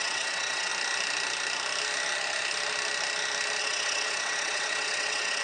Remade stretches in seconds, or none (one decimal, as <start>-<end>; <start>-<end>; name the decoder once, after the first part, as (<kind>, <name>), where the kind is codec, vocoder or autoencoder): 0.0-0.7 (vocoder, WaveNeXt); 3.6-5.4